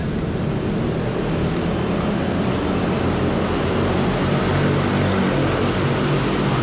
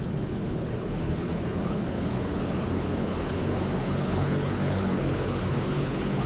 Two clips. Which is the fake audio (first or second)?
second